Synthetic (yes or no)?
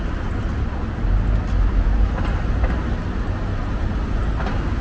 no